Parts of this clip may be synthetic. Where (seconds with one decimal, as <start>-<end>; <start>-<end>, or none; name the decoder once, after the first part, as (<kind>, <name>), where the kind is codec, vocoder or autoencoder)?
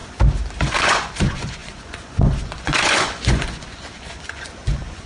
0.6-5.1 (vocoder, Vocos)